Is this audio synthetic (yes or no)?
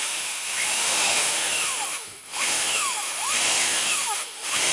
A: yes